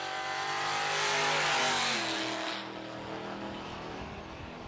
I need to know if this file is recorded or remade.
recorded